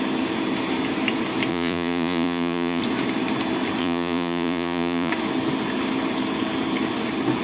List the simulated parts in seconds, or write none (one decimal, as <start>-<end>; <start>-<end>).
1.5-2.8; 3.8-5.1